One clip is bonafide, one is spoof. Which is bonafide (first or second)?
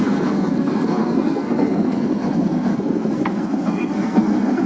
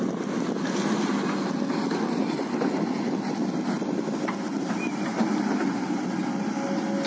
second